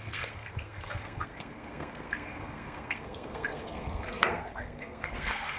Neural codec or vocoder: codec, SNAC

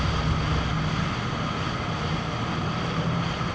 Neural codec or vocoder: none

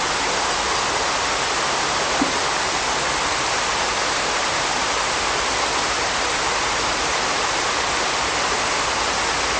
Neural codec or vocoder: none